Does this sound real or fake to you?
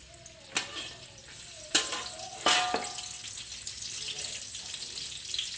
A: real